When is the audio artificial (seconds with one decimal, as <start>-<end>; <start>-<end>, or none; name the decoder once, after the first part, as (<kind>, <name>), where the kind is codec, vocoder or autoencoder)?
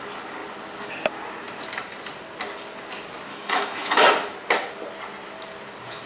3.3-4.1 (autoencoder, DAC-VAE)